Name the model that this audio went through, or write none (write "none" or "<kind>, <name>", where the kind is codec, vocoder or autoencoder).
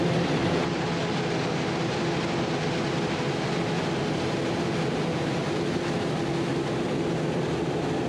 none